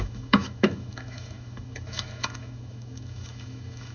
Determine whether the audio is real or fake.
fake